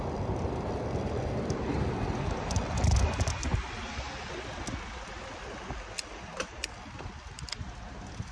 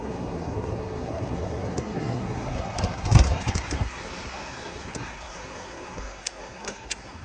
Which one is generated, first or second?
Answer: second